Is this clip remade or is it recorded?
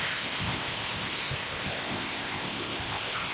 remade